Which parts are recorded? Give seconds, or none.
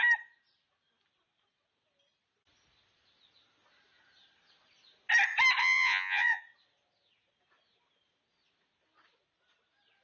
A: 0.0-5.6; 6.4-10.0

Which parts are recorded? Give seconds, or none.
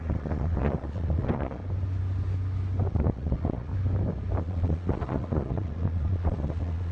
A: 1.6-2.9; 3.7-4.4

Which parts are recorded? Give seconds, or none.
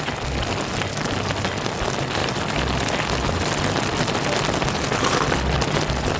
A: 0.0-6.2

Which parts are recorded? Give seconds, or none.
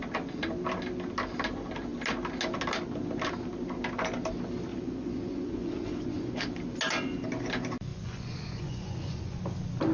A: 0.0-4.7; 6.4-7.9; 9.4-9.9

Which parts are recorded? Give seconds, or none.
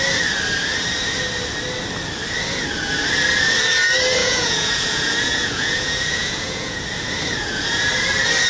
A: 0.0-4.2; 6.8-7.4; 7.9-8.5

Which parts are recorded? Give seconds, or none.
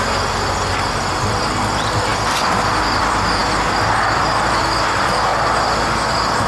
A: 0.0-6.5